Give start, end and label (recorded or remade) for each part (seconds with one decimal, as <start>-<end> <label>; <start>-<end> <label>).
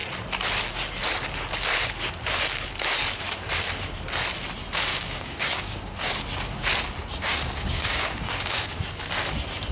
0.0-4.9 recorded; 4.9-6.1 remade; 6.1-7.1 recorded; 7.1-8.8 remade; 8.8-9.7 recorded